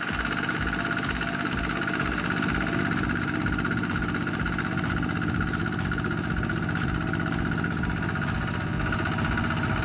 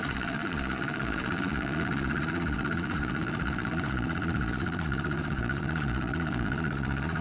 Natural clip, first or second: first